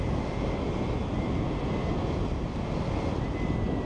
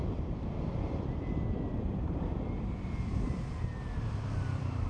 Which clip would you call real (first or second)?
first